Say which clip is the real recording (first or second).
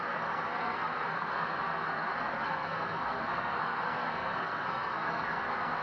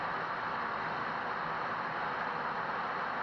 second